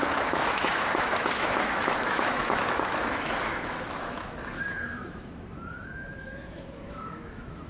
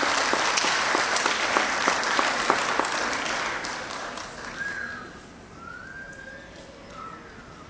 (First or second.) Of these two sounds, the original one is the second